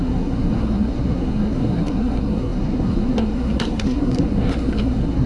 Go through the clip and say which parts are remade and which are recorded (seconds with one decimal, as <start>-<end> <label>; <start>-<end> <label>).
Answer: 0.0-5.3 remade